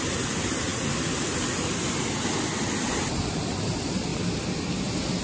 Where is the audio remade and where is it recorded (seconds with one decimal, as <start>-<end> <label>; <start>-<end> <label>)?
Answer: 0.0-5.2 recorded